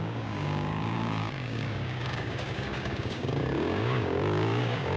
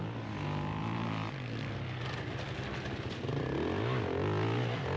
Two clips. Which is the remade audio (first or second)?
first